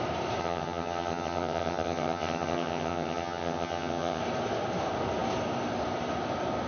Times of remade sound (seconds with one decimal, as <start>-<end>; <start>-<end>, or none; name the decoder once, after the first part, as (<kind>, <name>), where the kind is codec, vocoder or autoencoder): 0.4-4.2 (vocoder, HiFi-GAN)